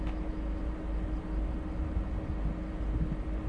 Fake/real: real